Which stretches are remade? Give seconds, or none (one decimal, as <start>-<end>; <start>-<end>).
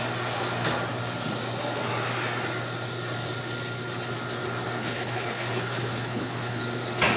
4.8-6.6